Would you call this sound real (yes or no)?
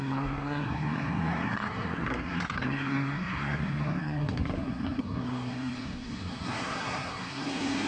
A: no